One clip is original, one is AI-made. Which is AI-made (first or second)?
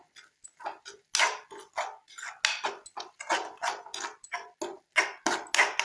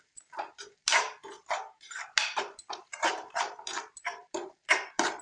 second